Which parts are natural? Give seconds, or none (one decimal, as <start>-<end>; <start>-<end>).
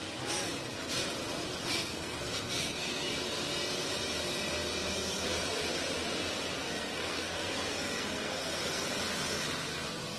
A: 0.0-1.6; 3.1-6.6; 9.0-10.2